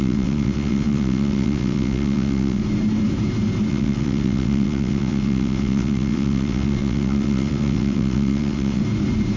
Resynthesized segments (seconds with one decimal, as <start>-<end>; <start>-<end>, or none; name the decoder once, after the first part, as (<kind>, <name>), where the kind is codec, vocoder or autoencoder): 0.0-2.6 (vocoder, WaveNeXt); 3.7-8.8